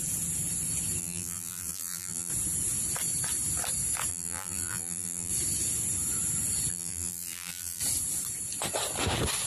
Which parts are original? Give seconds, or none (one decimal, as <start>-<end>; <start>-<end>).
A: 0.0-1.0; 2.3-4.1; 5.3-6.7; 7.8-9.5